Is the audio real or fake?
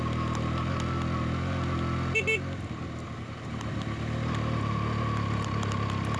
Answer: real